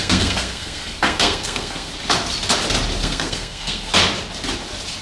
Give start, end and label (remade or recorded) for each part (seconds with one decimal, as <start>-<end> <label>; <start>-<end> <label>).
0.0-1.9 remade; 1.9-3.0 recorded; 3.0-3.9 remade; 3.9-5.0 recorded